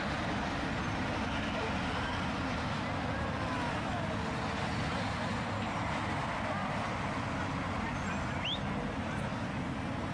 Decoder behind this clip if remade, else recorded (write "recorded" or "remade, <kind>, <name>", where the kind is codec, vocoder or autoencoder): recorded